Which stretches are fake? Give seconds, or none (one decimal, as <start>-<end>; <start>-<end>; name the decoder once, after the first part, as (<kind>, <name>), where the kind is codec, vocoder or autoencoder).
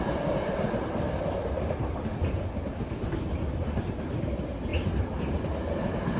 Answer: none